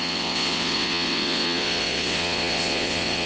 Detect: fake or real fake